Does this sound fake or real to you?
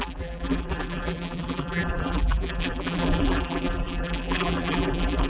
fake